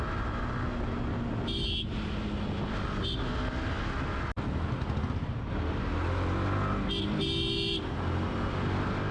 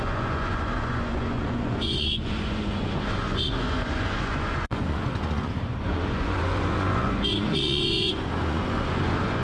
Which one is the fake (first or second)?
second